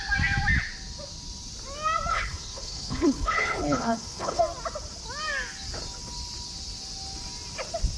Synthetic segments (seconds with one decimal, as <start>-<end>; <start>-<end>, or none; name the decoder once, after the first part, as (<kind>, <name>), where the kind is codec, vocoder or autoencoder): 2.1-4.4 (codec, HILCodec)